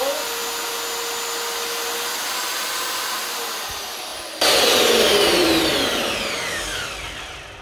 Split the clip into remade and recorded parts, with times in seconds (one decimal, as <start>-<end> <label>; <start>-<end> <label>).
0.0-7.6 recorded